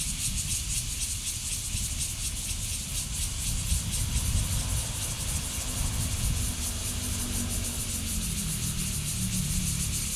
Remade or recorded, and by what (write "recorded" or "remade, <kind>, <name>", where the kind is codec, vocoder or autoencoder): recorded